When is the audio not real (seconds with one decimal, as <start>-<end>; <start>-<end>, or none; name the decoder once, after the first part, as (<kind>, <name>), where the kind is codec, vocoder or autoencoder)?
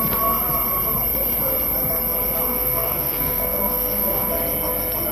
2.5-4.3 (codec, SNAC)